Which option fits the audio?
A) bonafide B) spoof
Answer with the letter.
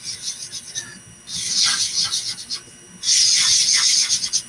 A